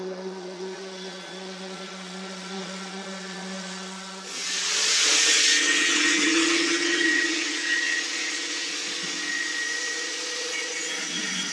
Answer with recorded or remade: remade